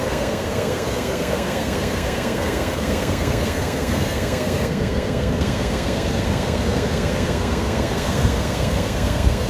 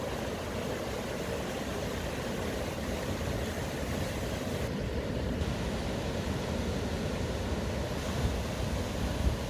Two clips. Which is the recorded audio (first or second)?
second